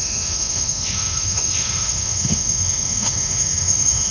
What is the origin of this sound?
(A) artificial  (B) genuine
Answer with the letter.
A